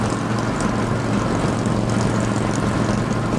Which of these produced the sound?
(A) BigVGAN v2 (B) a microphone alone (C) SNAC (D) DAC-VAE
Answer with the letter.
B